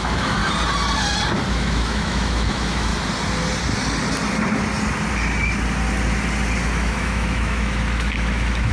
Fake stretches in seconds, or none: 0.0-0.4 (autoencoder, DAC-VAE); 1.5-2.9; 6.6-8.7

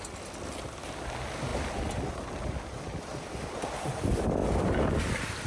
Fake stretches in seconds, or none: none

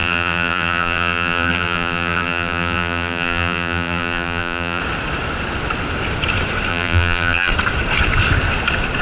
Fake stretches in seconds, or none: 0.0-4.8 (vocoder, BigVGAN v2); 6.7-7.5

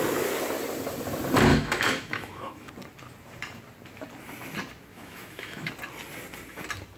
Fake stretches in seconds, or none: 1.5-2.7 (autoencoder, DAC-VAE); 4.9-5.7

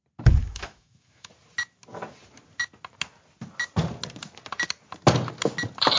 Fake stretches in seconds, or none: 0.4-1.3 (autoencoder, DAC-VAE)

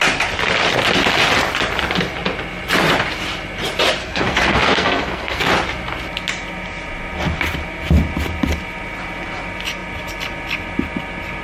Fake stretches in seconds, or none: 4.0-5.5 (codec, SNAC)

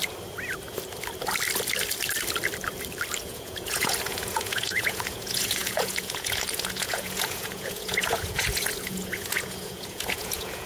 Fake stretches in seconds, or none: 3.2-10.7 (vocoder, Vocos)